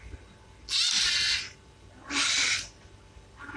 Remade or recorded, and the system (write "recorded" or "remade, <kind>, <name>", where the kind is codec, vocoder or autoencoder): recorded